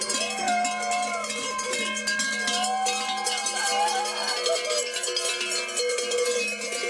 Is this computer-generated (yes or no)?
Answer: no